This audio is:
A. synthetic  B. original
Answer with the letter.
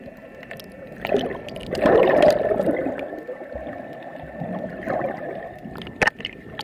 B